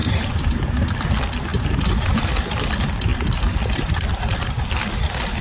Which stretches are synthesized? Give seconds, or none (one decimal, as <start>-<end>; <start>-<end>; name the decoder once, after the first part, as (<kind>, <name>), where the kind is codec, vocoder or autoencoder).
0.0-1.0 (vocoder, BigVGAN v2); 1.5-2.3; 3.1-4.4